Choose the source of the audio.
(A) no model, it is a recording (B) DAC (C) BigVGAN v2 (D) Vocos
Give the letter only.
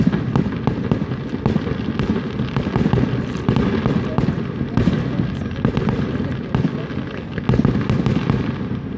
A